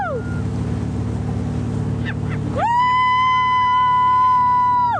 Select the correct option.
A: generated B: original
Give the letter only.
B